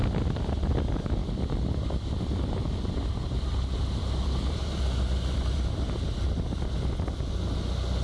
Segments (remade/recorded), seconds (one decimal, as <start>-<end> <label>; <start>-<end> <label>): 0.0-2.6 recorded; 2.6-6.8 remade; 6.8-8.0 recorded